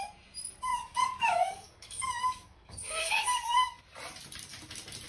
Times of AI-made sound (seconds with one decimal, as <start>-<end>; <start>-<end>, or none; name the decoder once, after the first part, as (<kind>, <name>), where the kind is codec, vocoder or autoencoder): 0.7-3.8 (codec, DAC)